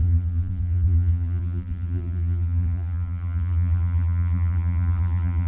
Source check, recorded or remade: remade